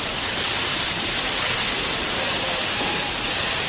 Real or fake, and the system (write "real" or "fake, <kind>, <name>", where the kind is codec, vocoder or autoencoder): fake, vocoder, BigVGAN v2